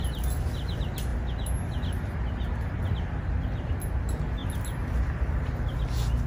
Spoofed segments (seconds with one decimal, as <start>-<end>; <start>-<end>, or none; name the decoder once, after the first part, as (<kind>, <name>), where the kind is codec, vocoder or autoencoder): none